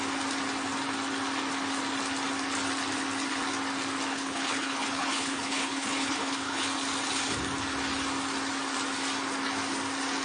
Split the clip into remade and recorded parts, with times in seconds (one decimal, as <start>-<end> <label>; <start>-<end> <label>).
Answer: 0.0-4.1 recorded; 4.1-6.6 remade; 6.6-10.2 recorded